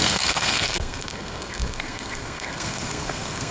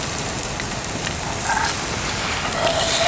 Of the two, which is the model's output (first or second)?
first